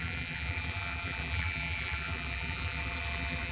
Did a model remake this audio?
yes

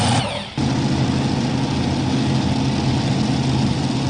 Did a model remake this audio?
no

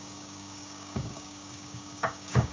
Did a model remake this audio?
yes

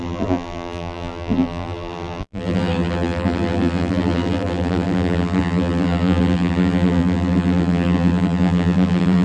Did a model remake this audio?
yes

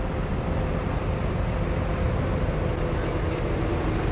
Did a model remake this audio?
no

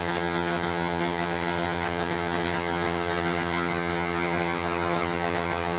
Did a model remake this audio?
yes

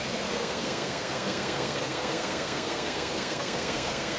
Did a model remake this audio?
yes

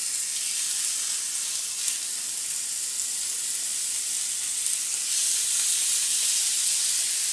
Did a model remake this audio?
no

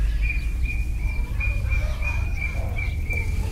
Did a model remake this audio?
no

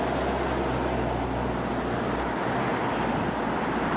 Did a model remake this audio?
no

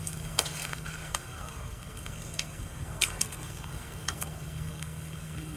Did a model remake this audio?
yes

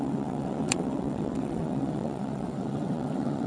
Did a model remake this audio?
yes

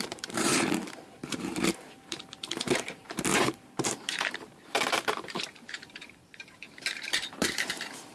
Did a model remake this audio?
yes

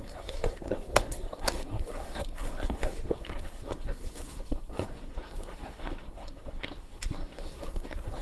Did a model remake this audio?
yes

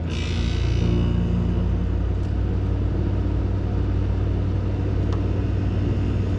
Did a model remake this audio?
no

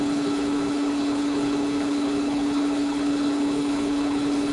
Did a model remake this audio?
yes